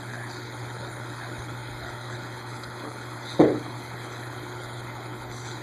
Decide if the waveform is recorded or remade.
remade